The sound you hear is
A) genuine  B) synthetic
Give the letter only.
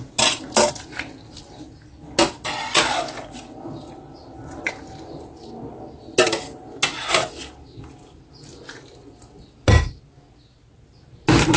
A